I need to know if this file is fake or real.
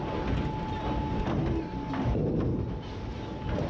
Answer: real